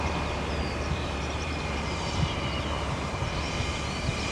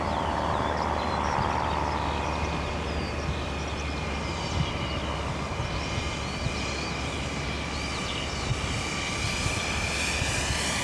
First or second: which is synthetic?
first